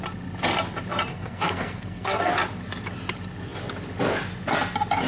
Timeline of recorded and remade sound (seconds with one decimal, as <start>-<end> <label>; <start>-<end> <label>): 0.0-1.1 recorded; 1.1-2.3 remade; 2.3-5.1 recorded